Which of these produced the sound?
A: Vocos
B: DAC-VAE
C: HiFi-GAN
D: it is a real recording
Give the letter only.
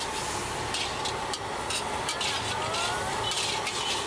D